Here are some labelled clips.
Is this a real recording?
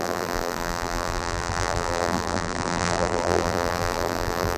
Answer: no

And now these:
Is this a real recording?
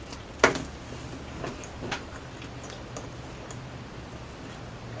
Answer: yes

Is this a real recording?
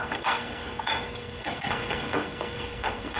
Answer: no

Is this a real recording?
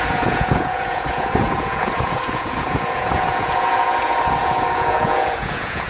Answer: no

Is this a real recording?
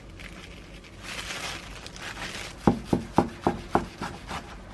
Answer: yes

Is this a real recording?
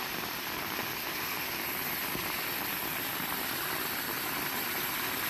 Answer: yes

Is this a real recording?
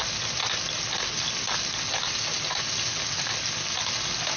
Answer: yes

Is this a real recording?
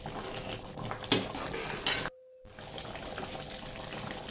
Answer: yes